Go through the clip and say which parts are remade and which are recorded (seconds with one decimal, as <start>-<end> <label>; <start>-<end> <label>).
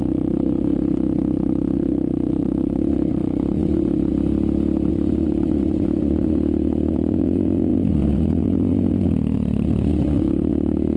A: 0.0-4.1 remade; 4.1-4.9 recorded; 4.9-11.0 remade